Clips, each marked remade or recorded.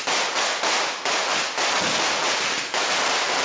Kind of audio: recorded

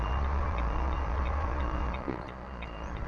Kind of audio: remade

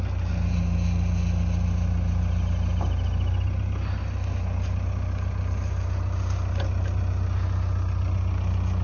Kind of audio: recorded